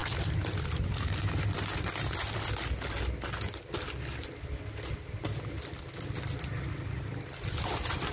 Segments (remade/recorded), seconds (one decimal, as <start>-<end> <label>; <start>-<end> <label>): 0.0-8.1 recorded